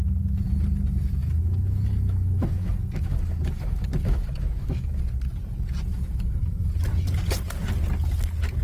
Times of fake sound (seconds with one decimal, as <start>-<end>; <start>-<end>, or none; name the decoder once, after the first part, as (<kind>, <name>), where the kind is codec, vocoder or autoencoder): 1.2-5.0 (autoencoder, DAC-VAE); 5.9-6.7